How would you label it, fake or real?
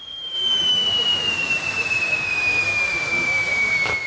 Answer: fake